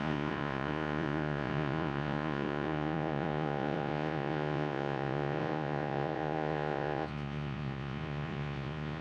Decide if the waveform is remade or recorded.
remade